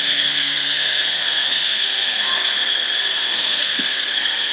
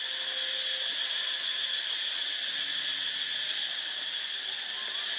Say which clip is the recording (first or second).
second